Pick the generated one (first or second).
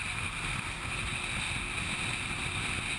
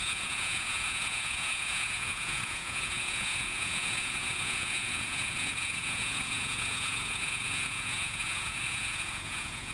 second